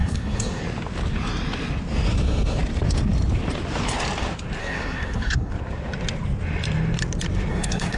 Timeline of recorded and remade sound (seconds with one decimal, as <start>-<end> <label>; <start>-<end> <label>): 0.0-0.6 remade; 0.6-4.6 recorded; 4.6-5.5 remade; 5.5-7.5 recorded; 7.5-8.0 remade